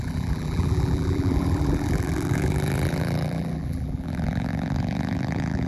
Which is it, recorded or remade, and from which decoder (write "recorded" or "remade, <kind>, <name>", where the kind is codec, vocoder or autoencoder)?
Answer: remade, vocoder, BigVGAN v2